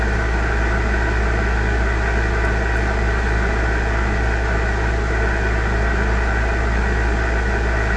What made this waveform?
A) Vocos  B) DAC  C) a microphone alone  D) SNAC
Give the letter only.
C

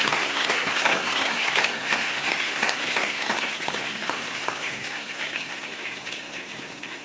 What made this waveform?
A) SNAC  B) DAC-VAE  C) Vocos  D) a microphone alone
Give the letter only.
A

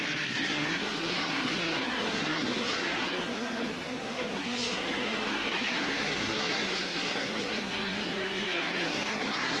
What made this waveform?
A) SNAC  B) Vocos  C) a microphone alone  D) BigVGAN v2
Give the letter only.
A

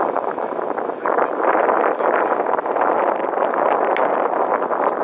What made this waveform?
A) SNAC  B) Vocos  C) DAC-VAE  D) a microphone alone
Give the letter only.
D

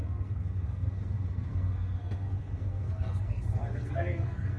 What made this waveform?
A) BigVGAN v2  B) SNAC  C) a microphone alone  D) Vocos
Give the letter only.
B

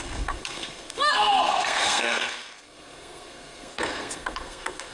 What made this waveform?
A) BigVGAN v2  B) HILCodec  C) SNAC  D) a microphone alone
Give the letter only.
C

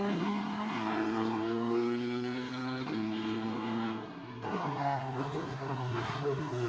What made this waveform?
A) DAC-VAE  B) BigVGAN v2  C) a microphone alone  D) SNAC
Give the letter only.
D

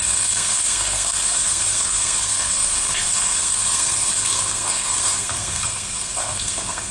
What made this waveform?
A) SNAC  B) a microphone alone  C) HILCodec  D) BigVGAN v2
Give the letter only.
A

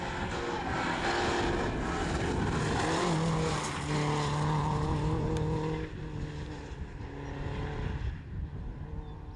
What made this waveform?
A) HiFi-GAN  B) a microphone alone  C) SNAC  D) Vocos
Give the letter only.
B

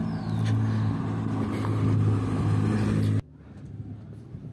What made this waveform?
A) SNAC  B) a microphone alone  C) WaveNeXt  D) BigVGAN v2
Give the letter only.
B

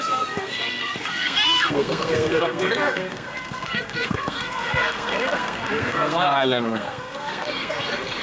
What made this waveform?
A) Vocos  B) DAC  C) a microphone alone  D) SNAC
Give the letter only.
D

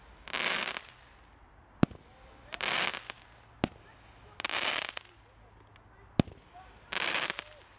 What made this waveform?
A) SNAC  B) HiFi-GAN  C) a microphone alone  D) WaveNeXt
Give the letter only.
C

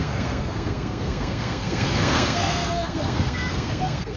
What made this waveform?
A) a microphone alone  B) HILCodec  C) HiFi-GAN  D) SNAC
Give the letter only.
D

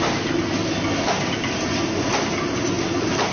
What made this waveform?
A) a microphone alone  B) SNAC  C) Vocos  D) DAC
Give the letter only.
A